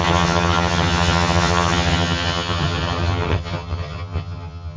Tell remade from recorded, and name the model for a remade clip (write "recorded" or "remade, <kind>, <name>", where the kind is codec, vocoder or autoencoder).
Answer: remade, vocoder, HiFi-GAN